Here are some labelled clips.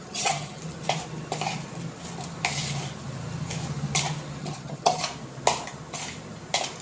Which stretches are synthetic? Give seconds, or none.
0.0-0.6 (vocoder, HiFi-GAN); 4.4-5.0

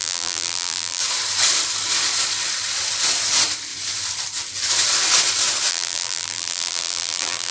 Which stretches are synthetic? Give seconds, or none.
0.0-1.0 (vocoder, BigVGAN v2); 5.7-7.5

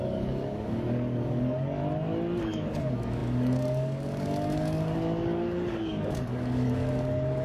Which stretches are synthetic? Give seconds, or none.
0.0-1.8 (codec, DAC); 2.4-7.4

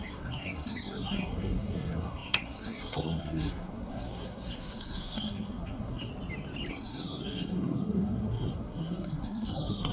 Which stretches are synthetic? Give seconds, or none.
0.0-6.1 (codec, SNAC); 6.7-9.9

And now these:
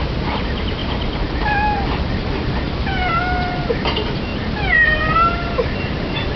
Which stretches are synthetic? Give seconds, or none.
0.0-4.3 (vocoder, BigVGAN v2); 5.0-6.4